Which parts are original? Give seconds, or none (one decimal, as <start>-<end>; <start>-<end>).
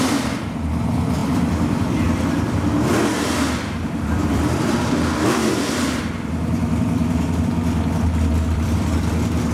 none